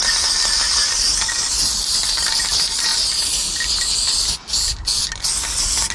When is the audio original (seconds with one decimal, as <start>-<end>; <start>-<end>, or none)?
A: 0.0-5.9